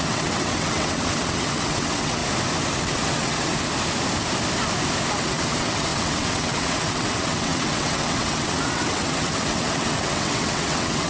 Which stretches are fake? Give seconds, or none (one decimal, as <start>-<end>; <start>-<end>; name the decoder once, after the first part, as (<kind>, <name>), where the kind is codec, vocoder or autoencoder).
0.0-2.2 (vocoder, WaveNeXt); 2.8-3.5; 5.1-11.1